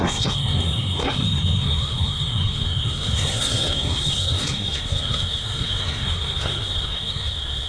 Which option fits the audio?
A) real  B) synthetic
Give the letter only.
B